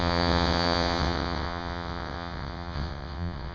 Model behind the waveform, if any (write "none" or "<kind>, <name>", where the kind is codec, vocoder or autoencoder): vocoder, WaveNeXt